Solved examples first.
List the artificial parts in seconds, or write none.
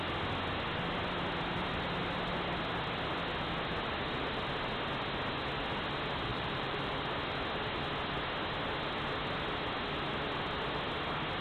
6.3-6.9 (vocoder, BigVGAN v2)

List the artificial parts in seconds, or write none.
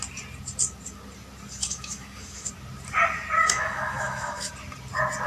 1.6-2.5 (autoencoder, DAC-VAE); 3.4-4.5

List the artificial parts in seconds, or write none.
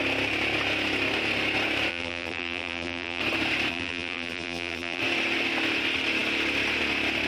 1.9-3.2 (vocoder, BigVGAN v2); 3.7-5.0